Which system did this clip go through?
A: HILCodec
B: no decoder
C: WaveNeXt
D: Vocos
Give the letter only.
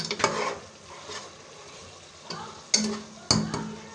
B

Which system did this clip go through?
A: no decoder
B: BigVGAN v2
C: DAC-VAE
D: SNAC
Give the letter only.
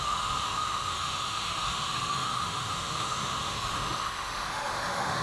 C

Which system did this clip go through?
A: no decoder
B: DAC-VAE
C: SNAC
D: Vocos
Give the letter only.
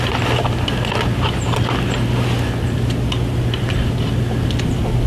A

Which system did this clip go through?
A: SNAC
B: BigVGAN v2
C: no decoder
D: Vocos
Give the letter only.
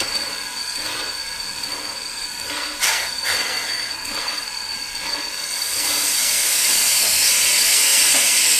A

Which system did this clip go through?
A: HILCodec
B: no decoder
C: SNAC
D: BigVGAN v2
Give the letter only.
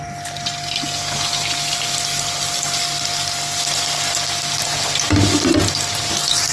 B